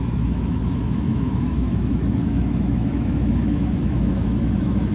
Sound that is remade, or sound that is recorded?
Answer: remade